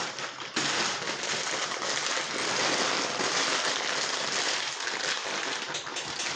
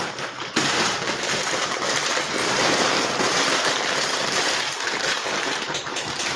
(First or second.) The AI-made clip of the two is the second